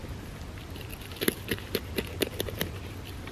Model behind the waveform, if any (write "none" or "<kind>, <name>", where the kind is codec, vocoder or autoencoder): none